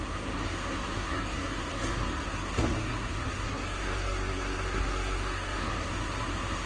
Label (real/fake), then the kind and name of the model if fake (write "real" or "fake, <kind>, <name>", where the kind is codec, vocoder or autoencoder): fake, codec, SNAC